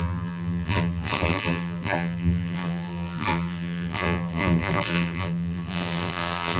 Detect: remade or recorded remade